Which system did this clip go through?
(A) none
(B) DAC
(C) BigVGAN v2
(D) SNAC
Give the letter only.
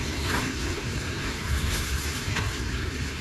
D